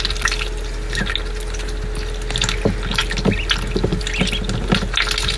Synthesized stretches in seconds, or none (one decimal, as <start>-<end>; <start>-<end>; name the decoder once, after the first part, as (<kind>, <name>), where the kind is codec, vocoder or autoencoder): none